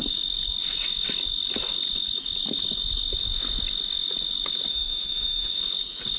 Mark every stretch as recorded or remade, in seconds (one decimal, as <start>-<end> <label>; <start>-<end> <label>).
0.0-4.7 recorded; 4.7-5.6 remade; 5.6-6.2 recorded